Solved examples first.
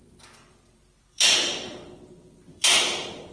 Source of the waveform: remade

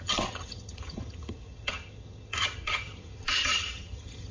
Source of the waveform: remade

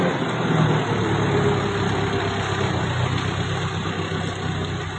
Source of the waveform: recorded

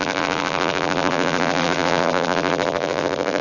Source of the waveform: remade